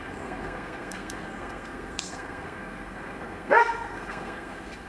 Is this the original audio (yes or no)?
no